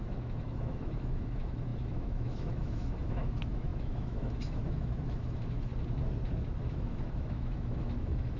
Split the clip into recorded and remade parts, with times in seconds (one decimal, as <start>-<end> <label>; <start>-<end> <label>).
0.0-5.7 remade; 5.7-6.7 recorded; 6.7-8.4 remade